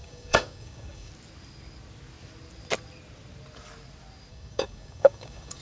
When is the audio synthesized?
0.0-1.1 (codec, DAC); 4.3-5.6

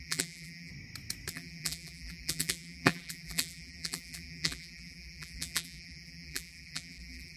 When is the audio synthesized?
0.0-0.7 (vocoder, BigVGAN v2); 1.3-7.4

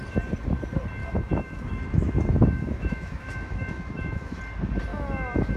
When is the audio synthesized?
1.0-4.4 (autoencoder, DAC-VAE); 4.9-5.6

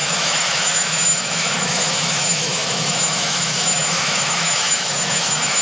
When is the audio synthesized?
0.0-5.6 (autoencoder, DAC-VAE)

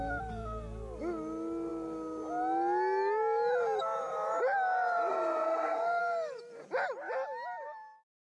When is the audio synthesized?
5.1-6.0 (codec, SNAC)

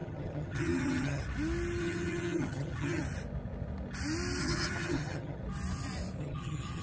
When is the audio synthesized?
0.0-1.2 (vocoder, HiFi-GAN); 1.8-3.0; 4.4-5.4; 6.2-6.8

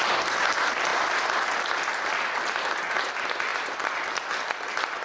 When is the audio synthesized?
none